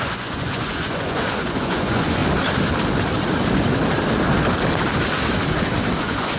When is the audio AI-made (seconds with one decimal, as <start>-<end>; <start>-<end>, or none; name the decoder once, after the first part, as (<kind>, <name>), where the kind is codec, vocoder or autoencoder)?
0.0-2.2 (vocoder, Vocos); 6.0-6.4